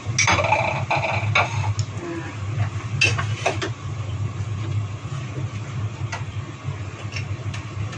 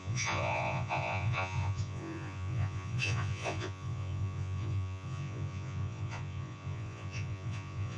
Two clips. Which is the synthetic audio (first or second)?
second